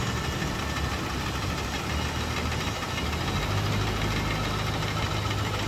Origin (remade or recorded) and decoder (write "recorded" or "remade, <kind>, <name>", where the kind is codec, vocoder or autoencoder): recorded